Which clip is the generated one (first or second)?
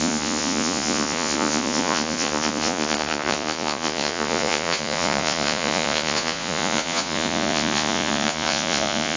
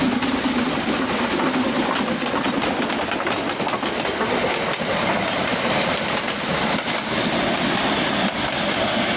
first